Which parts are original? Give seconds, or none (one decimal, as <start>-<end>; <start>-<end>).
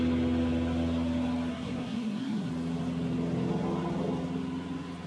0.0-1.5; 2.5-5.1